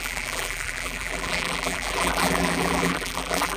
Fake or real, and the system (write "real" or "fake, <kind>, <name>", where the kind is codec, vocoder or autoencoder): fake, vocoder, BigVGAN v2